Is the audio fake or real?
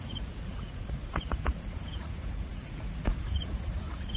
fake